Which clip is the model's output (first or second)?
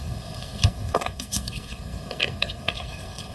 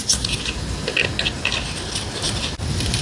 first